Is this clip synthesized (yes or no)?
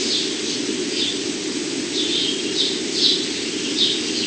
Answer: no